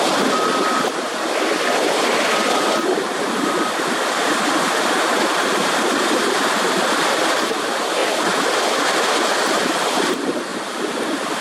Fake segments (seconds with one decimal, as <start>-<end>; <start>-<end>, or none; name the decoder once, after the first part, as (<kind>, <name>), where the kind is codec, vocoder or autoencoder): 0.0-8.0 (vocoder, BigVGAN v2); 9.6-10.5; 11.0-11.4